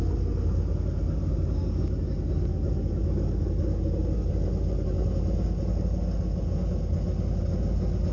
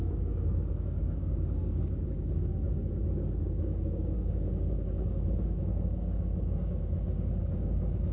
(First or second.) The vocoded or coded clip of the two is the second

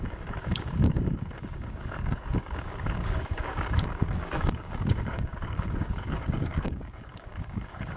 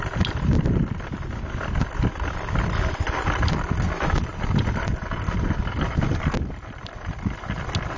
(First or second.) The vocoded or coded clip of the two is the first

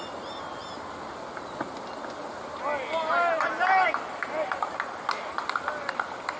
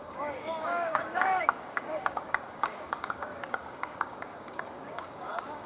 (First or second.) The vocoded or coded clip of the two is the second